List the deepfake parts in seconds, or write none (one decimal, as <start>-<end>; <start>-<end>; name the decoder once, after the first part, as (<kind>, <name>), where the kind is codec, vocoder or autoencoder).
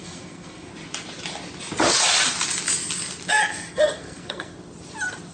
0.0-0.7 (codec, SNAC); 3.3-4.5